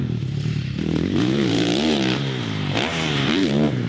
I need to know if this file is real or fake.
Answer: fake